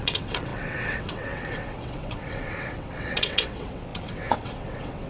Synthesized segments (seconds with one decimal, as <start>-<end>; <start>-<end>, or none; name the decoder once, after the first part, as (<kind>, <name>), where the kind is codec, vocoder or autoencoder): 0.0-5.1 (vocoder, WaveNeXt)